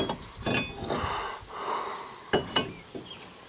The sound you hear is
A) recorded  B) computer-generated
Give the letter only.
A